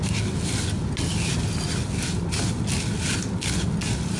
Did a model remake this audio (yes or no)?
no